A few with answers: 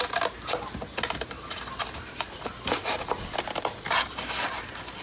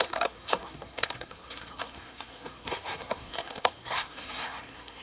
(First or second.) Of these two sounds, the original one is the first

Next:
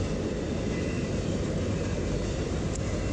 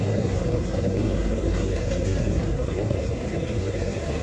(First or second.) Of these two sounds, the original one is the first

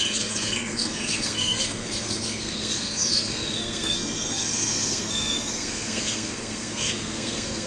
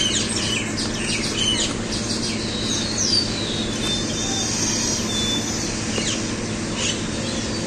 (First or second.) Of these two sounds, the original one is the second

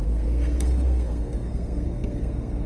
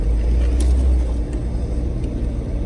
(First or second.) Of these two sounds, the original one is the second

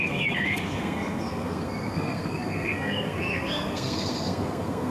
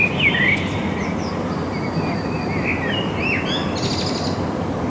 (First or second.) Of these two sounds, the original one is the second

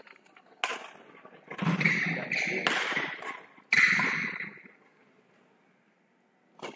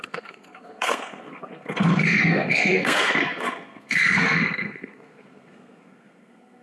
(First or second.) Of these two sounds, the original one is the first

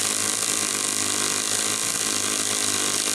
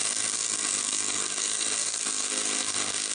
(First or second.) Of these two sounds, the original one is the first